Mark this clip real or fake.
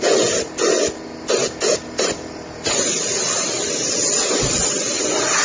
real